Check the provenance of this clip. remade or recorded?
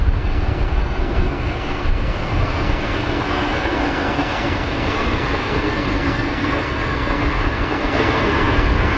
remade